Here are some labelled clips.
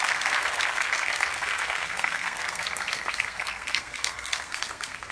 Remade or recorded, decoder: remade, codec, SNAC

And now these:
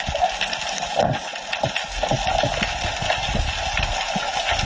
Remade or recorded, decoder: recorded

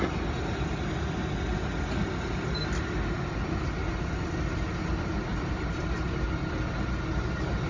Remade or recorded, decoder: recorded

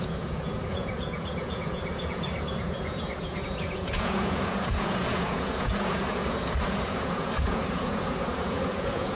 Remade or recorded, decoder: remade, vocoder, Vocos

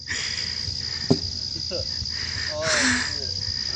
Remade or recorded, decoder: recorded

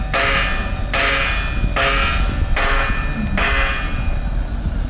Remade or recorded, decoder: recorded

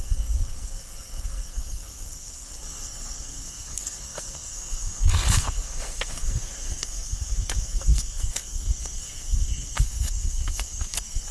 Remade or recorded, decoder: remade, codec, SNAC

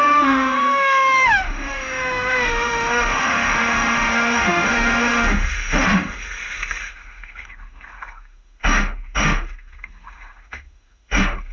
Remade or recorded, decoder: remade, autoencoder, DAC-VAE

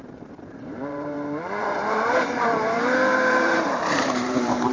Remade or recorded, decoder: remade, vocoder, BigVGAN v2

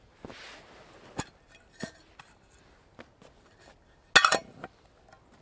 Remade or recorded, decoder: recorded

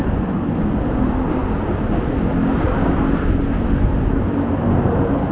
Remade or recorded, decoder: recorded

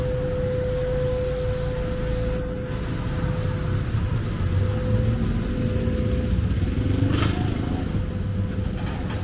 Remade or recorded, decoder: recorded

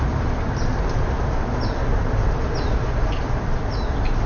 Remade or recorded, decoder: recorded